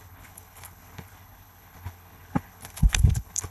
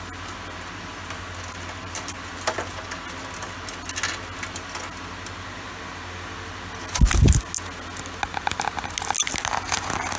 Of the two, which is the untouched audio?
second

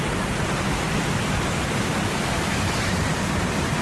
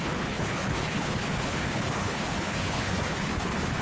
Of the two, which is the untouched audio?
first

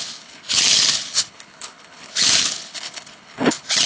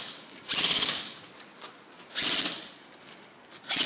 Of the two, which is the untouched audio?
second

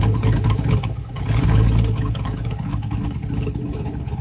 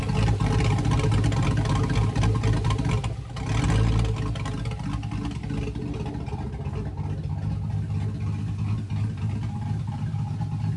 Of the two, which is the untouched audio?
second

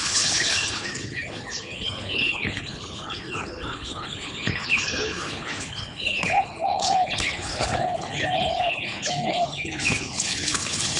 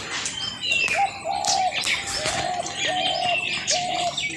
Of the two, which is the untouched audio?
second